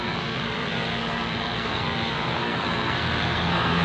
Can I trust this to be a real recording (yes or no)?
no